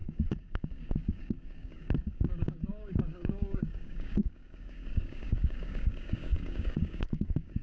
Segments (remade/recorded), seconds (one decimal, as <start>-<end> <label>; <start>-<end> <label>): 0.0-7.6 remade